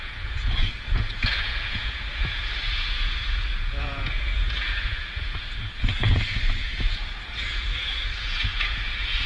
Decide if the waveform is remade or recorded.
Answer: remade